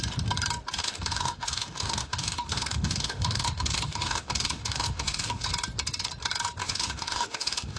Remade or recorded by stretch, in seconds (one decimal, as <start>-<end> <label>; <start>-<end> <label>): 0.0-0.8 recorded; 0.8-5.5 remade; 5.5-6.6 recorded; 6.6-7.8 remade